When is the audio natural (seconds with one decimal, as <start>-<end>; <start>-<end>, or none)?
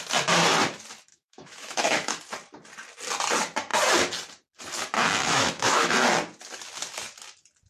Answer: 0.0-1.1; 2.2-5.2; 5.9-7.7